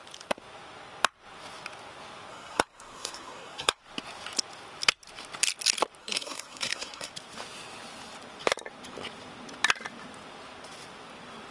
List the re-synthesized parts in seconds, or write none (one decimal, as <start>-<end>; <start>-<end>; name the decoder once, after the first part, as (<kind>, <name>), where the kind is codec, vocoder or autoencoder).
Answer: 2.3-3.8 (codec, SNAC); 6.0-7.1